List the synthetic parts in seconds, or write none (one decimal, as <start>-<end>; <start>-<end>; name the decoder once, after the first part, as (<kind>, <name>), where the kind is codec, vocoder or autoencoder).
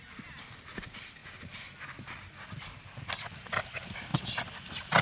none